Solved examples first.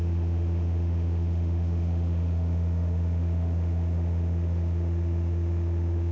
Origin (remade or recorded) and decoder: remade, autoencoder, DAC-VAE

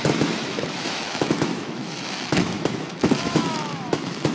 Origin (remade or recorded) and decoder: remade, autoencoder, DAC-VAE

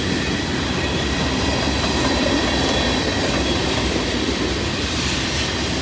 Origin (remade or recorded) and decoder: recorded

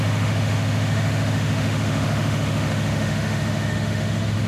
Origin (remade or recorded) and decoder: remade, autoencoder, DAC-VAE